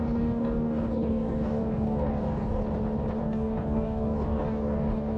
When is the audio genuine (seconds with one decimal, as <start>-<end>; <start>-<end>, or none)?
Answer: 2.6-3.2